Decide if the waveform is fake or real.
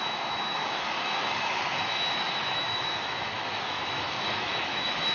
fake